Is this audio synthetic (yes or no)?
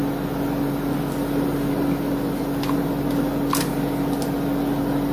no